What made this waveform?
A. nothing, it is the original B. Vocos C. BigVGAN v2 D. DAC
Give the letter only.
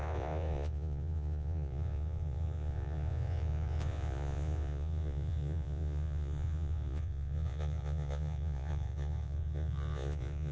B